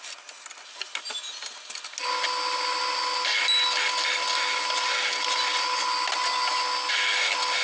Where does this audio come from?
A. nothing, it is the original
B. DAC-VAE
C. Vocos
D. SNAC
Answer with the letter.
A